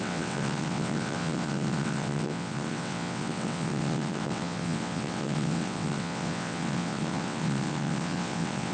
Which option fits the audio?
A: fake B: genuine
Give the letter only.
A